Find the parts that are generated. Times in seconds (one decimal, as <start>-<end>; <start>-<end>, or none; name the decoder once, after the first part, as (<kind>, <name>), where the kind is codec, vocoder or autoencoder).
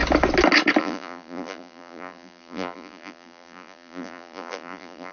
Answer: 0.8-5.1 (vocoder, BigVGAN v2)